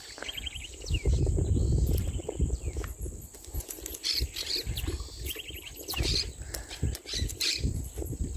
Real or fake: real